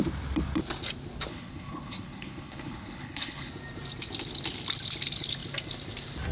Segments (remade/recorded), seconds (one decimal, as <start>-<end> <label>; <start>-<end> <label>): 0.0-1.3 recorded; 1.3-3.5 remade; 3.5-6.3 recorded